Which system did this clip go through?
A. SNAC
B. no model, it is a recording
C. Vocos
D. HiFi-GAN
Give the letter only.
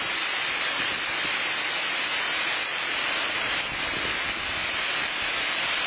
B